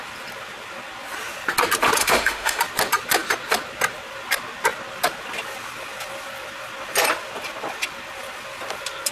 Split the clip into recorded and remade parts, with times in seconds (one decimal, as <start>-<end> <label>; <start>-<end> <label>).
0.0-2.0 recorded; 2.0-2.6 remade; 2.6-9.1 recorded